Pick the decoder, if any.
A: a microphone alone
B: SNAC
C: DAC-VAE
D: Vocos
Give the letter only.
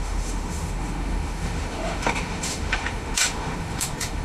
C